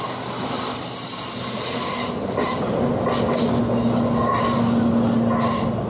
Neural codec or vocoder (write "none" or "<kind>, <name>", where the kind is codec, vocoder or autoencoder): none